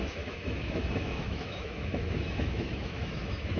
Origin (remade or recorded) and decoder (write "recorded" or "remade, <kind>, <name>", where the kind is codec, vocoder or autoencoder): remade, autoencoder, DAC-VAE